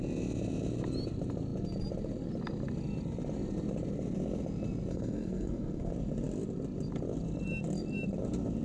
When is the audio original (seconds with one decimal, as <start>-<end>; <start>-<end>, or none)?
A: 0.0-4.9; 5.9-8.6